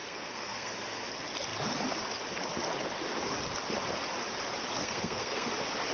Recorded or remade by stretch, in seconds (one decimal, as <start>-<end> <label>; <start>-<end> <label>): 0.0-0.7 remade; 0.7-4.8 recorded; 4.8-5.5 remade; 5.5-5.9 recorded